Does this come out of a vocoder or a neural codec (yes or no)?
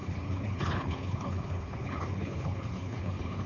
yes